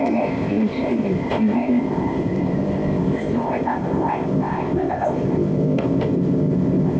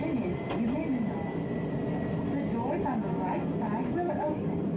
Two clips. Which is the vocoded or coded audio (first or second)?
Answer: first